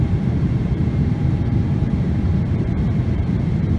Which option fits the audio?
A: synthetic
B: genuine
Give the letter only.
A